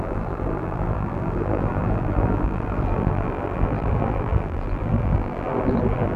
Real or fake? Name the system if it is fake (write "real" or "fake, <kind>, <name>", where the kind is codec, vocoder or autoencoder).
fake, vocoder, BigVGAN v2